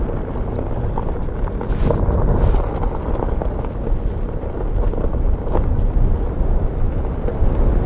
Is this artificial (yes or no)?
no